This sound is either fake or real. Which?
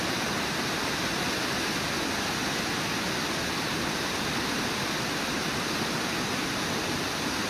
real